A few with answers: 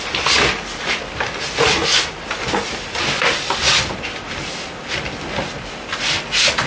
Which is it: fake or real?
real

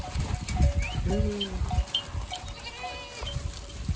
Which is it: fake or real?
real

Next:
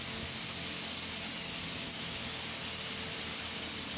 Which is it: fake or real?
real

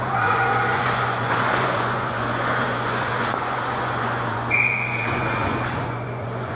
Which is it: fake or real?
fake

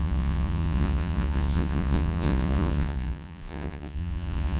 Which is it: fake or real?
fake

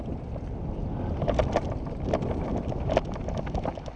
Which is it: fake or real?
real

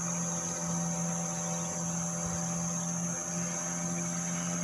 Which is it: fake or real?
real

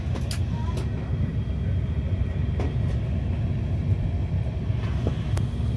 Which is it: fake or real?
real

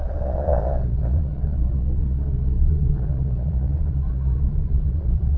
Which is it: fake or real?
fake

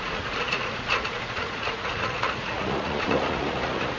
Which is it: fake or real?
fake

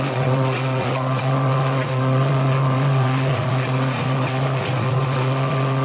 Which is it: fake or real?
fake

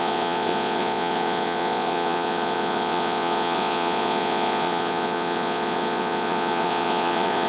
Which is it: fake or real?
fake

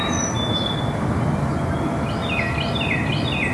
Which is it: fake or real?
real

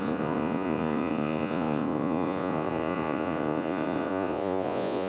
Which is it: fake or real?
fake